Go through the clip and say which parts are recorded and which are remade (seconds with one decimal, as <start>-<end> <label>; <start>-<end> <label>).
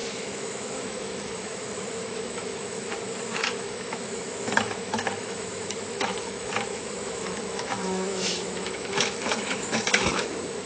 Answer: 0.0-10.7 remade